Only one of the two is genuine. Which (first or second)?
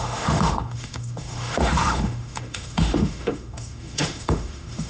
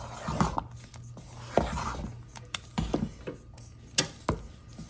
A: second